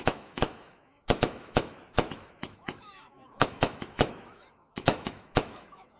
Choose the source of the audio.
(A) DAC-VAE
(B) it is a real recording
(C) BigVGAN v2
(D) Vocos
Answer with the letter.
A